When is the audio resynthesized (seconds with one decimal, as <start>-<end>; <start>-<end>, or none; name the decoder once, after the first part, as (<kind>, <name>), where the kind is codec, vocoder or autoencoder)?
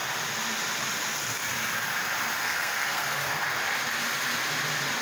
2.4-3.4 (codec, SNAC)